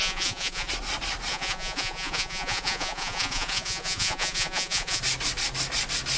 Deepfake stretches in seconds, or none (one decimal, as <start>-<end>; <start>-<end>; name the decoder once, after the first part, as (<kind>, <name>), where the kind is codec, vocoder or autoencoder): 0.0-0.7 (vocoder, Vocos); 1.3-5.0